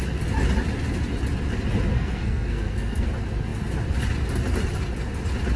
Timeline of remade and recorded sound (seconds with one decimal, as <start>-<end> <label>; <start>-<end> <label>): 0.0-1.9 recorded; 1.9-3.1 remade; 3.1-5.6 recorded